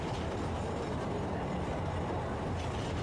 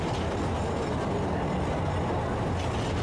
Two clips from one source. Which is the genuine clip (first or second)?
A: second